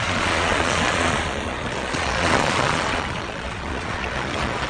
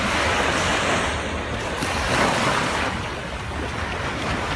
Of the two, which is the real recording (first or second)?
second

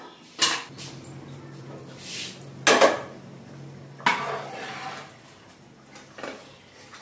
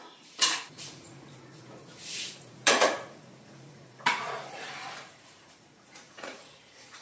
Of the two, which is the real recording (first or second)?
first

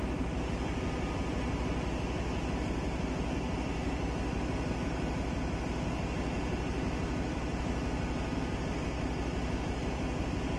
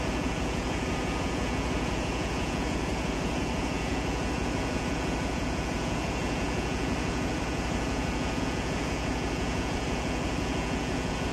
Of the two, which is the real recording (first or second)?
first